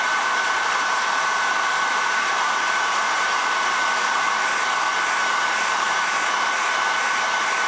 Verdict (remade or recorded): remade